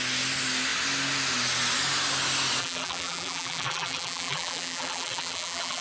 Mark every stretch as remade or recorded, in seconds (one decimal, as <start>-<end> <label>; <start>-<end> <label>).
0.0-2.6 recorded; 2.6-5.8 remade